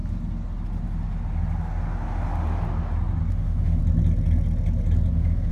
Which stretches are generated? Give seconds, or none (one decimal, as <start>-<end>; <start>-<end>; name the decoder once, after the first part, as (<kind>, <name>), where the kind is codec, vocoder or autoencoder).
3.3-3.8 (autoencoder, DAC-VAE); 5.1-5.5